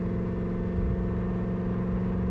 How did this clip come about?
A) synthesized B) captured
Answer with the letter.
B